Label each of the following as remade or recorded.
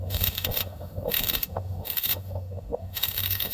remade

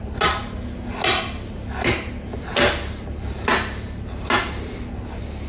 recorded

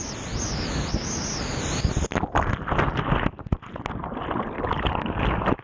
recorded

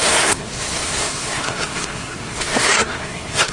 remade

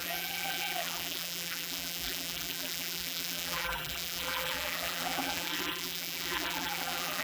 remade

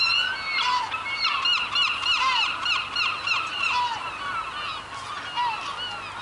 recorded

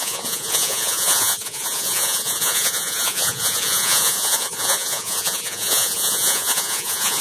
remade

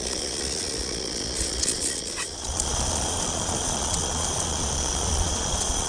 remade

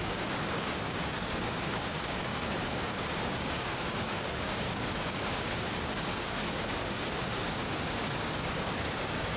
remade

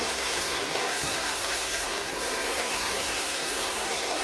remade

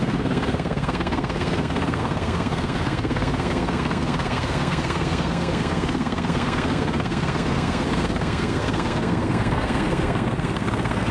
remade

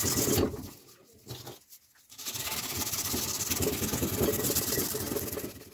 recorded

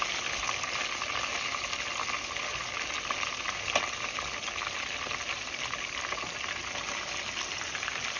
recorded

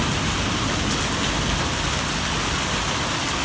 recorded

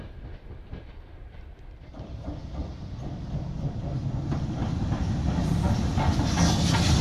recorded